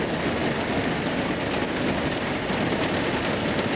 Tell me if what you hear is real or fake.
real